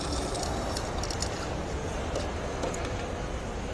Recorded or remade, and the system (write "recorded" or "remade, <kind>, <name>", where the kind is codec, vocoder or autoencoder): recorded